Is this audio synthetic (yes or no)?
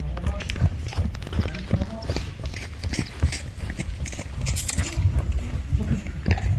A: no